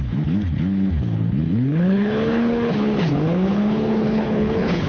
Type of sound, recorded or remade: remade